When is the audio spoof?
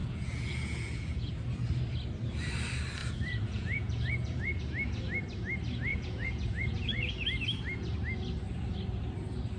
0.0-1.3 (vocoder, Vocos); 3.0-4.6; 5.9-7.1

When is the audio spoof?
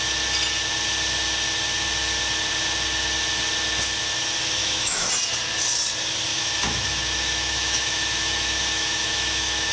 4.6-5.1 (autoencoder, DAC-VAE); 6.3-9.7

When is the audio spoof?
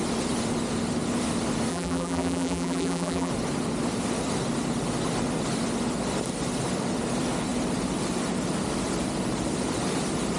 1.7-3.3 (vocoder, BigVGAN v2)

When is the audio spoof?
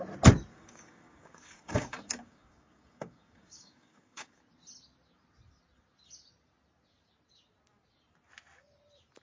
0.5-4.4 (codec, DAC)